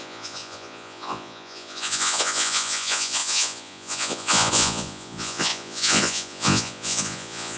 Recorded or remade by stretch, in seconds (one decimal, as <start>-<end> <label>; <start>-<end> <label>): 0.0-7.6 remade